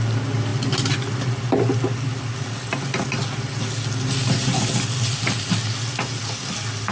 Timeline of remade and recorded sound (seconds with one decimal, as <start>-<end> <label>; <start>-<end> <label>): 0.0-6.9 recorded